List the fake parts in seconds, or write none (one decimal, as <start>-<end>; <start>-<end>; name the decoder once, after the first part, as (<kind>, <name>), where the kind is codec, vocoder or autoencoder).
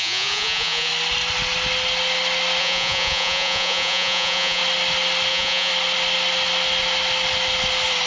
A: 0.0-0.9 (vocoder, Vocos); 2.6-4.6; 5.3-5.7